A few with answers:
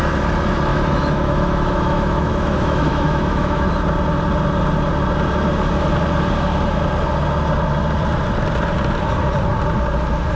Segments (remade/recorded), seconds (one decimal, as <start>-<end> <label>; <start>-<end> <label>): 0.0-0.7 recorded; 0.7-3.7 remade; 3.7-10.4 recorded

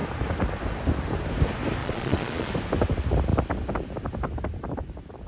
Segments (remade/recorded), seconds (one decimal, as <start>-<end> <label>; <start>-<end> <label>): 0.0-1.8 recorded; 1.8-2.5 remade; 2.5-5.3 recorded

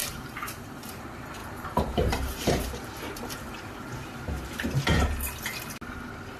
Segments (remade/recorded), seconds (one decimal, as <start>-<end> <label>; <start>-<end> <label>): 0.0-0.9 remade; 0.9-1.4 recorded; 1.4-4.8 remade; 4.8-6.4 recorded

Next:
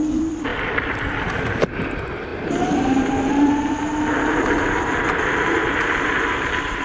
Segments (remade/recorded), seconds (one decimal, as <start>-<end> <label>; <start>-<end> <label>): 0.0-2.3 remade; 2.3-3.3 recorded; 3.3-6.8 remade